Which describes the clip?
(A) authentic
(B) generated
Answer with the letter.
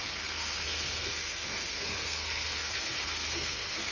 B